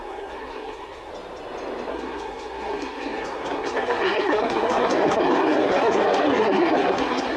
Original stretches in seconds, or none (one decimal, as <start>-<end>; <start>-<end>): 1.1-1.9